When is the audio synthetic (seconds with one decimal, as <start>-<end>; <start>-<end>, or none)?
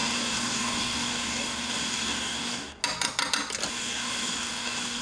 0.0-2.8; 3.7-5.0